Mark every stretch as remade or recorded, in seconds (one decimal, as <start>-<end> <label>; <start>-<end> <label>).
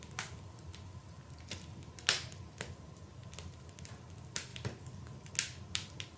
0.0-6.2 recorded